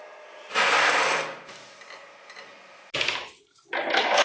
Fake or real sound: real